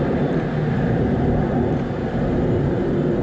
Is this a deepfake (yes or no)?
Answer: no